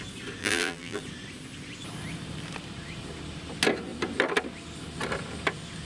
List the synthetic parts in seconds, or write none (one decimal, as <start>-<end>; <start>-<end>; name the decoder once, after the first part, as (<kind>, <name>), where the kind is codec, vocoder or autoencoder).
0.4-1.0 (vocoder, BigVGAN v2)